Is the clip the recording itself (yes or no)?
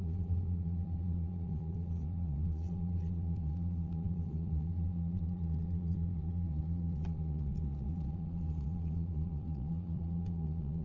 no